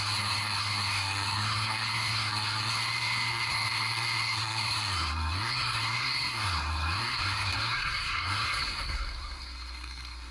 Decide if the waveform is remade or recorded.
remade